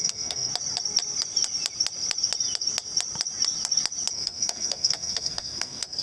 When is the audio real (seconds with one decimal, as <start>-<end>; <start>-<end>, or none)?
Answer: 0.5-4.1